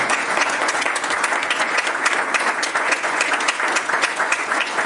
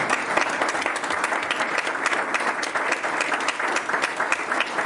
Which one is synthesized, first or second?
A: first